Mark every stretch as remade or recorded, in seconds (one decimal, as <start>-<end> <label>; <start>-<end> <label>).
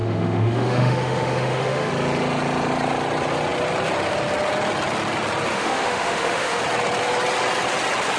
0.0-1.9 remade; 1.9-5.5 recorded; 5.5-6.6 remade; 6.6-8.2 recorded